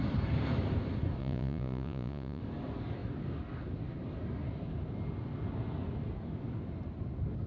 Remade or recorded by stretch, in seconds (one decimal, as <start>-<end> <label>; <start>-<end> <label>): 0.0-1.2 recorded; 1.2-2.4 remade; 2.4-7.5 recorded